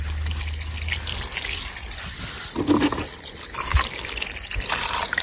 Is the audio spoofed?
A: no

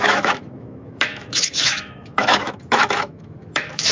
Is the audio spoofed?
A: yes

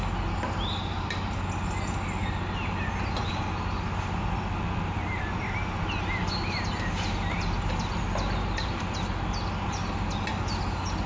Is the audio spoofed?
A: no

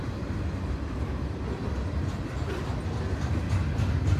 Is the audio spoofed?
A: no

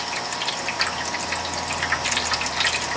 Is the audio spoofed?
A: no